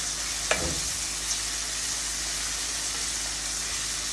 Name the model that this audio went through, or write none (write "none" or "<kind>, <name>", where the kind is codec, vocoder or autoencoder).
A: none